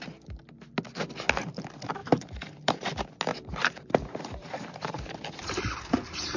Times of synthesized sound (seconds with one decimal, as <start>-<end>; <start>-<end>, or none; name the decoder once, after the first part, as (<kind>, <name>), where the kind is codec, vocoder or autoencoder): 2.0-2.5 (vocoder, BigVGAN v2); 3.3-6.4